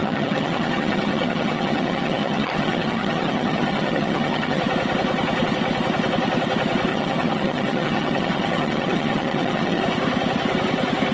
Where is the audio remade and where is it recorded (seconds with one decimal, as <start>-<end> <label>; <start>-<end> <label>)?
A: 0.0-4.6 remade; 4.6-6.9 recorded; 6.9-9.8 remade; 9.8-11.1 recorded